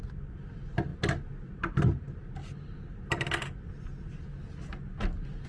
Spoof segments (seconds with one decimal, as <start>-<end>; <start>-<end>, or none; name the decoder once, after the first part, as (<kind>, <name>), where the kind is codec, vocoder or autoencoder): none

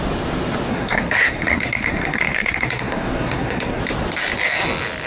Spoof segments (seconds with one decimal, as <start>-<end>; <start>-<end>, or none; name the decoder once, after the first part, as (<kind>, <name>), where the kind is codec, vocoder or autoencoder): 0.7-3.8 (codec, SNAC)

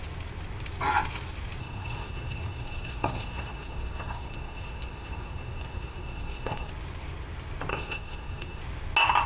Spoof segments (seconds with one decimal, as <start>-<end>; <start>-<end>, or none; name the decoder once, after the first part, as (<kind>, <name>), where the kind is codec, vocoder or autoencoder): 1.6-6.7 (codec, SNAC); 7.7-8.6